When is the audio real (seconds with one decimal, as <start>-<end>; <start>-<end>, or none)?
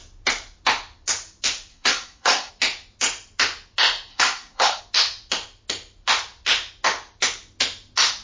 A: 0.0-1.7; 2.5-4.1; 4.8-8.2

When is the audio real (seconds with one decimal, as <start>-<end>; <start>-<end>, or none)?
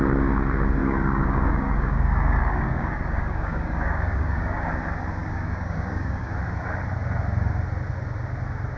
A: 0.0-0.8; 4.7-5.2; 6.3-8.8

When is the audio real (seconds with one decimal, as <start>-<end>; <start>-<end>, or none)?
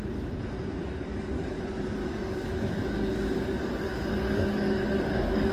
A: 0.0-0.8; 1.6-2.0